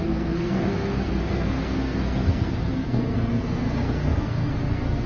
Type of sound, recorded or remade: remade